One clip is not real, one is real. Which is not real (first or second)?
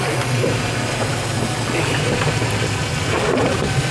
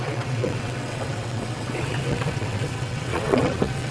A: second